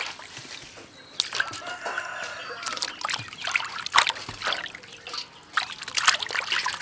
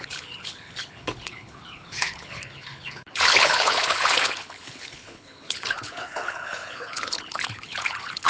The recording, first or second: first